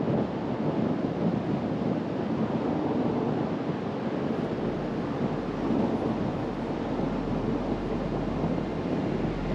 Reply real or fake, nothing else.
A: real